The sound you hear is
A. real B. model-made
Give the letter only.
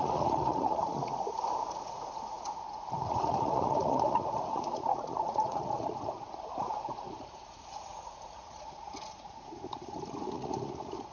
B